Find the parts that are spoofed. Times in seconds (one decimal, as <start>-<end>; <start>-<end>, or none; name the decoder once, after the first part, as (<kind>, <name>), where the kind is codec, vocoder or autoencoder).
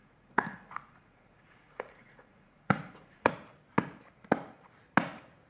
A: 0.0-3.3 (vocoder, Vocos)